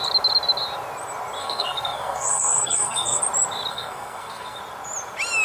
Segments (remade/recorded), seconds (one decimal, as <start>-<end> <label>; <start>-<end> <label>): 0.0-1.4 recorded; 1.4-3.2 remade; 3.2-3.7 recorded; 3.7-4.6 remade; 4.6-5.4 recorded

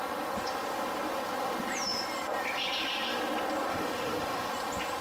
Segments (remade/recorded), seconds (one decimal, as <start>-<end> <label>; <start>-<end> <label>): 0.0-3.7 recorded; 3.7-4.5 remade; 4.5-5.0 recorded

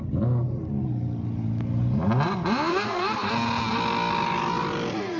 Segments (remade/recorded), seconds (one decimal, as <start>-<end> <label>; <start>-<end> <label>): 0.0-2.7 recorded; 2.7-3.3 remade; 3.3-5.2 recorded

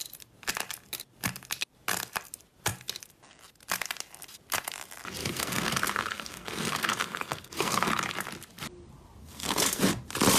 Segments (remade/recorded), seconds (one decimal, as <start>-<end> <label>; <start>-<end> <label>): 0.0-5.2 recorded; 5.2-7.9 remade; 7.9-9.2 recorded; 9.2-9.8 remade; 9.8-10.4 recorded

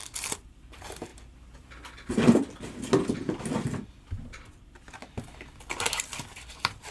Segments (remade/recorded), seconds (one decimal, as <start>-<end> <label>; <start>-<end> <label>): 0.0-6.9 recorded

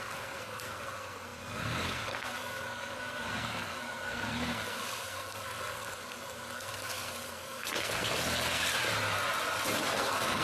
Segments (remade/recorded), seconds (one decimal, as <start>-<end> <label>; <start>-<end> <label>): 0.0-8.7 remade; 8.7-9.8 recorded; 9.8-10.4 remade